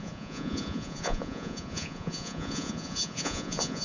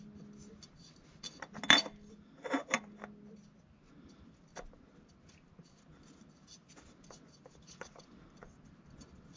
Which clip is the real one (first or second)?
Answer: second